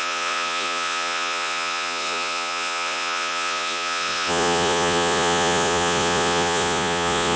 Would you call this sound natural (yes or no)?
no